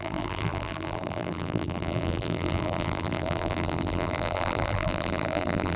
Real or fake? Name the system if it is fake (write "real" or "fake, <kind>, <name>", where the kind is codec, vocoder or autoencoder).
fake, vocoder, BigVGAN v2